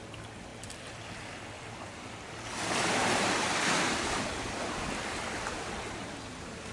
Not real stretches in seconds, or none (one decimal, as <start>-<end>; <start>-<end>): none